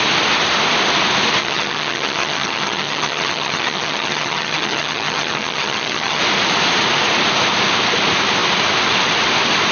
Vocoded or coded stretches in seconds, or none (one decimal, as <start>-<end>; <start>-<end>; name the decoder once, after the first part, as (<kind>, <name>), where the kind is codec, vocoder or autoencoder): 1.4-6.2 (vocoder, HiFi-GAN)